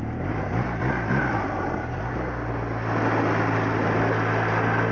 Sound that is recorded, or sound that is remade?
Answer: recorded